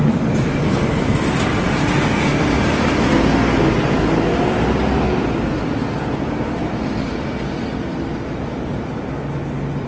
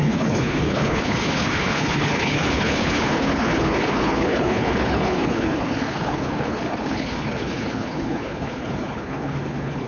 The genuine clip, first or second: first